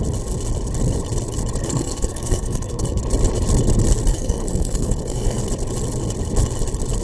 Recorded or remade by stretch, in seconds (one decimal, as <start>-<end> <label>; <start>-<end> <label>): 0.0-1.6 recorded; 1.6-3.0 remade; 3.0-4.1 recorded; 4.1-5.4 remade; 5.4-7.0 recorded